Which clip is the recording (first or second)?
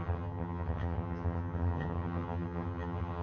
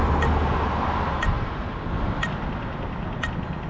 second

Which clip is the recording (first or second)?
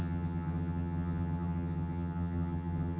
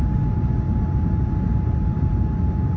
second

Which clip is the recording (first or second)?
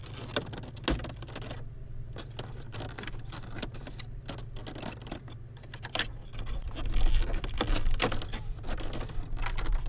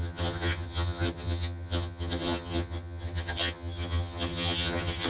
first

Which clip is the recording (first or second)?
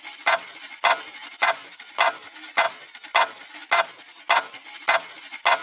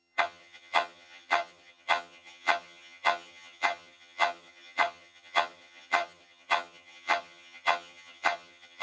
first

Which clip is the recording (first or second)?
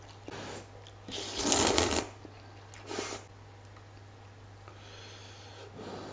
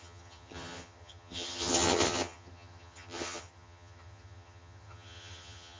first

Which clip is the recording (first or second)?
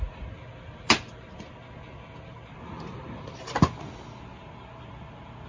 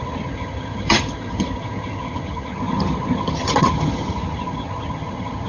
first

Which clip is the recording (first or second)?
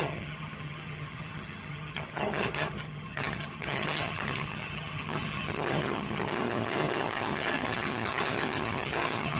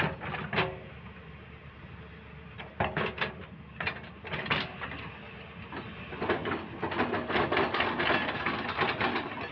second